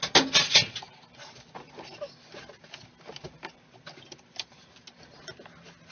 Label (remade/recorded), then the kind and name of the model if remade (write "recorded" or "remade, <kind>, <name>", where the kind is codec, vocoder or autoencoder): recorded